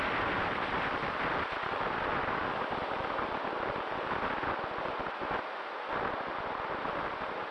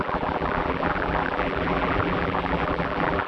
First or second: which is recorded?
first